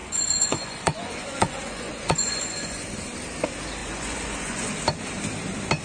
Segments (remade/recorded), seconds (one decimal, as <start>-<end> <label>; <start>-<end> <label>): 0.0-3.0 remade; 3.0-3.8 recorded; 3.8-4.7 remade; 4.7-5.8 recorded